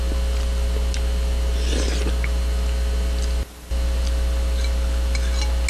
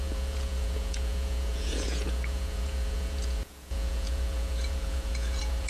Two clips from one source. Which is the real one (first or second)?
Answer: first